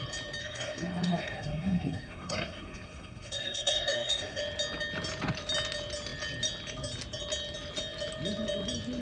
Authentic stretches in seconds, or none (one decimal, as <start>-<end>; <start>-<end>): 0.0-0.4; 4.4-9.0